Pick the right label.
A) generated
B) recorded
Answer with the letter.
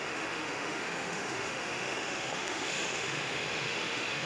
A